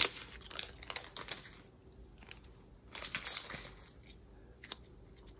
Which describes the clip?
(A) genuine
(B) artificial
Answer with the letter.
A